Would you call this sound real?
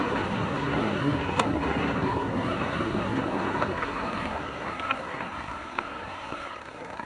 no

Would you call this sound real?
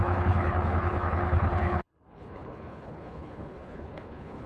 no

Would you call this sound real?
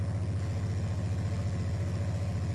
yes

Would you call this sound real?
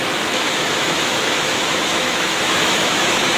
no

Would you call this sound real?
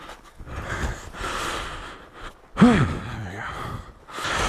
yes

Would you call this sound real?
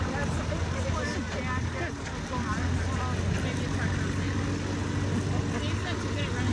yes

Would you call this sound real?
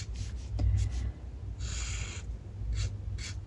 yes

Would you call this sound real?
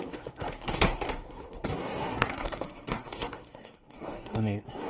no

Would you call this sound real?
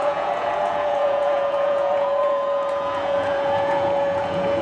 no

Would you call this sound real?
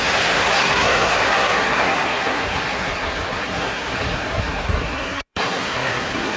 no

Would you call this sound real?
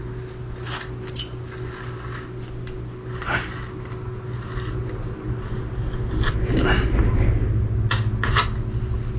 yes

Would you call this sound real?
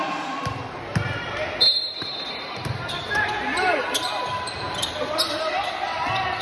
yes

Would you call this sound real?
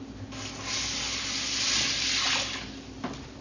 yes